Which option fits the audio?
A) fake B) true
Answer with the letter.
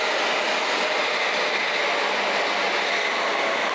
B